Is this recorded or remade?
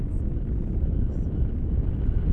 recorded